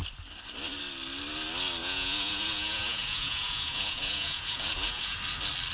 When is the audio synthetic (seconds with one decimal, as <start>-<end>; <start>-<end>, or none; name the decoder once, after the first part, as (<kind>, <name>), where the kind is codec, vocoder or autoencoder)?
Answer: 1.8-5.2 (vocoder, Vocos)